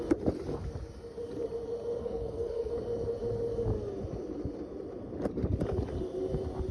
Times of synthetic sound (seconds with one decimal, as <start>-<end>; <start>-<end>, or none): 2.0-2.7